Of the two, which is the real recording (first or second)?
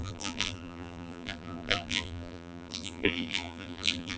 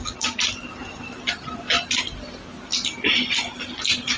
second